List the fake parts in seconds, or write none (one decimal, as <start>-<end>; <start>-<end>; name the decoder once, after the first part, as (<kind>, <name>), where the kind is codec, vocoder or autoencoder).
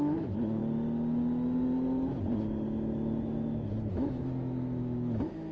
0.0-0.6 (autoencoder, DAC-VAE); 3.9-5.5